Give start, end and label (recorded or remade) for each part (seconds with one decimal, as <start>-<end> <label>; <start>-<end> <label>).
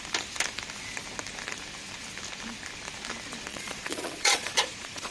0.0-3.5 recorded; 3.5-5.1 remade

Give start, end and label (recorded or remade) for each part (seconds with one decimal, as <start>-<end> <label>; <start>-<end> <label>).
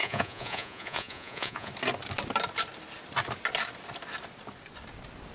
0.0-1.7 remade; 1.7-5.3 recorded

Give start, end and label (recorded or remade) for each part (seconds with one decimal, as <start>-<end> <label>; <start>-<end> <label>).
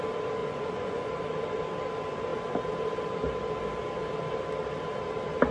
0.0-0.4 recorded; 0.4-1.1 remade; 1.1-5.5 recorded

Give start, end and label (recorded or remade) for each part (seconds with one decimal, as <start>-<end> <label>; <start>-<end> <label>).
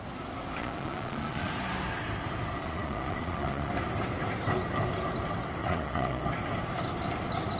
0.0-0.6 recorded; 0.6-1.5 remade; 1.5-2.6 recorded; 2.6-3.7 remade; 3.7-5.6 recorded; 5.6-6.2 remade; 6.2-7.6 recorded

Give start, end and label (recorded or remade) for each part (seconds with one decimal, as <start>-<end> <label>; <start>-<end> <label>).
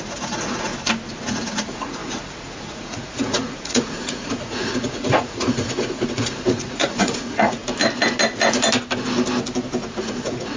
0.0-0.7 remade; 0.7-1.3 recorded; 1.3-7.6 remade; 7.6-10.0 recorded; 10.0-10.6 remade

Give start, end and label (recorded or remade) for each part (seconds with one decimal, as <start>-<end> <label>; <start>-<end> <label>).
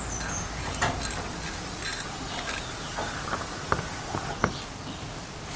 0.0-5.6 recorded